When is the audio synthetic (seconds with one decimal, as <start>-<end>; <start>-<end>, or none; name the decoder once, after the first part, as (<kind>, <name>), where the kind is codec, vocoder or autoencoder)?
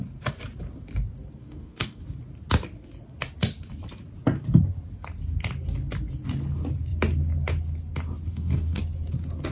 1.4-2.0 (codec, DAC); 8.3-8.8